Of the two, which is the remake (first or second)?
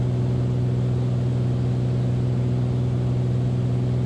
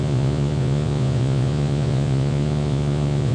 second